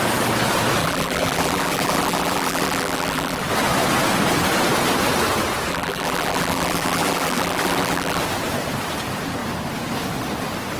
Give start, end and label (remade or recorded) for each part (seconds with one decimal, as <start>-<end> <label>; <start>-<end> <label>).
0.0-0.8 recorded; 0.8-3.4 remade; 3.4-5.7 recorded; 5.7-8.2 remade; 8.2-10.8 recorded